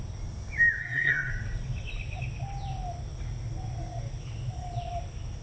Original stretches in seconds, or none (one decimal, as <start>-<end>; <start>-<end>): 0.0-0.8; 1.3-5.4